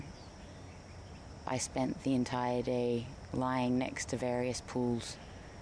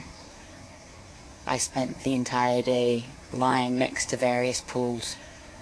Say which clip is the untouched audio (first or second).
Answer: first